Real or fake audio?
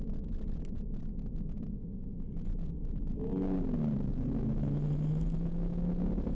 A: real